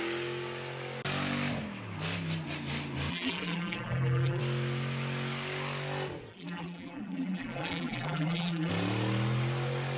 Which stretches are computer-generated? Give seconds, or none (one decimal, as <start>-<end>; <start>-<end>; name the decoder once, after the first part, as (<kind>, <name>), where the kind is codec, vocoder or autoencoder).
3.1-4.4 (vocoder, BigVGAN v2); 6.3-8.7